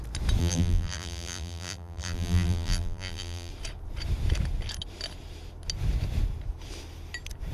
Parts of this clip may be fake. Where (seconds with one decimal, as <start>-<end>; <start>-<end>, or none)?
0.4-3.5

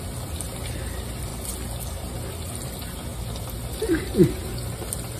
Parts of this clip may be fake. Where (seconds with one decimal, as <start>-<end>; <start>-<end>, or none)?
0.0-1.3; 2.5-3.1; 3.7-5.2

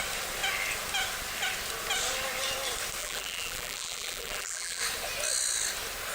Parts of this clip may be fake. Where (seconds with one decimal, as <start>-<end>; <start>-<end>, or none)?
3.0-4.8

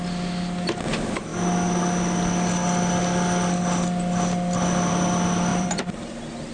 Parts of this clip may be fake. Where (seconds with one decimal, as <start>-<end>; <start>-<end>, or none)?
5.5-6.1

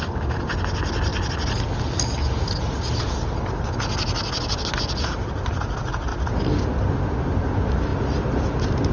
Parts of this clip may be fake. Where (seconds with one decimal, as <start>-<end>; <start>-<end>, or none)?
none

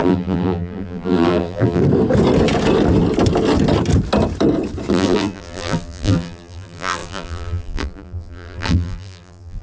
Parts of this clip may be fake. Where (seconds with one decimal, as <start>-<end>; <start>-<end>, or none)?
0.0-1.8; 4.9-9.6

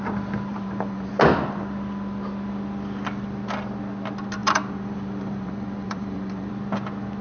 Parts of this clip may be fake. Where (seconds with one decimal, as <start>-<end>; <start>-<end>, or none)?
0.5-1.1; 4.4-6.5